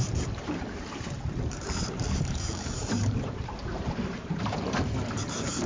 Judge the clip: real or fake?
fake